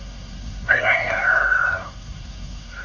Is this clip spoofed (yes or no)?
yes